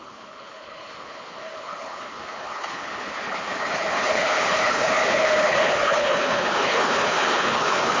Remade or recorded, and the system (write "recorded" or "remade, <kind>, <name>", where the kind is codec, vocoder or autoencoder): remade, codec, HILCodec